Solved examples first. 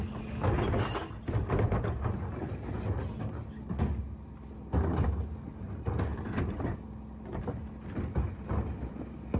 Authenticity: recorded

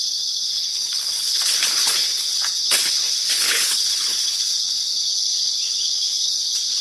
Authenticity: remade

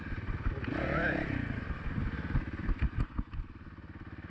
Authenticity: recorded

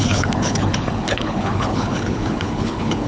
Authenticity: remade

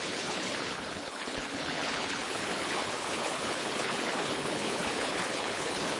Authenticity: remade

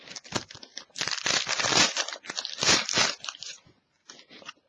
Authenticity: recorded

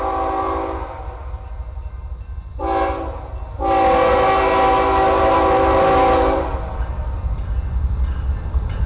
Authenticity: recorded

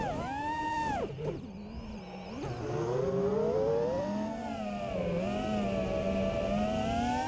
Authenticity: recorded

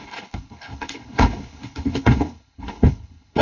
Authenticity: remade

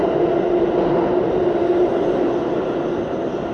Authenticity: recorded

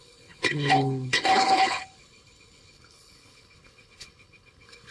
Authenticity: remade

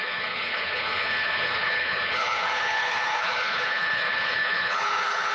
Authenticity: remade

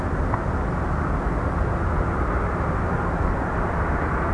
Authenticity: recorded